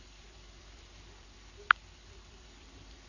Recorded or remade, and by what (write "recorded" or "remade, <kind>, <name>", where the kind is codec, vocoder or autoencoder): remade, vocoder, BigVGAN v2